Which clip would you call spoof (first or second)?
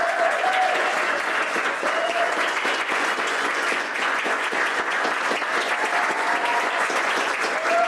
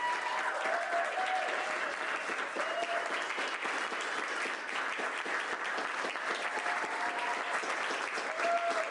first